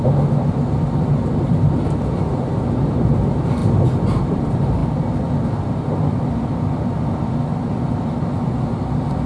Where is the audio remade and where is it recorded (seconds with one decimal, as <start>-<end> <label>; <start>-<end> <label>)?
0.0-9.3 recorded